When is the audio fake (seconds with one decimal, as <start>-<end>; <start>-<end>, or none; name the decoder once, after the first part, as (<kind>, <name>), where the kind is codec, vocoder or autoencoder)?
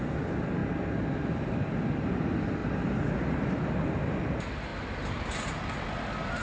none